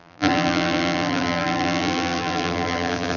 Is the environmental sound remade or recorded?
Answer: remade